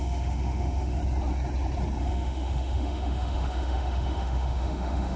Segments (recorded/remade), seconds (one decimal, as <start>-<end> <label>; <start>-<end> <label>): 0.0-1.0 remade; 1.0-2.0 recorded; 2.0-5.2 remade